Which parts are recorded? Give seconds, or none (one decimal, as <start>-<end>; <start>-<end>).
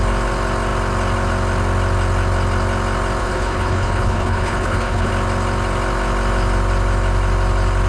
0.0-3.2; 5.1-7.9